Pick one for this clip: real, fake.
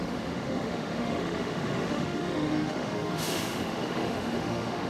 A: fake